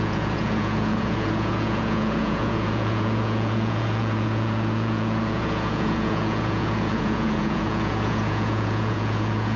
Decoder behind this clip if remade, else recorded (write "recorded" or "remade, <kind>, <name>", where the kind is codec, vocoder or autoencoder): remade, vocoder, Vocos